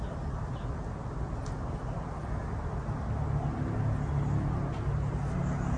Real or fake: real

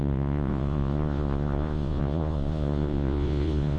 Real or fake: fake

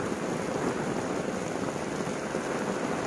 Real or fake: real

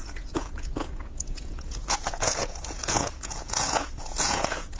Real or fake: fake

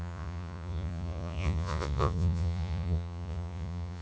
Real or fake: fake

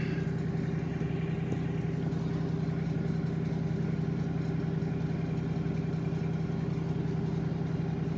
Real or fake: real